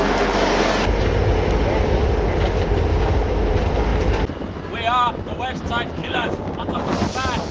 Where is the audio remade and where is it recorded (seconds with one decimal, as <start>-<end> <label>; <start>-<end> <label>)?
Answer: 0.0-2.9 recorded; 2.9-3.5 remade; 3.5-6.0 recorded; 6.0-6.9 remade; 6.9-7.5 recorded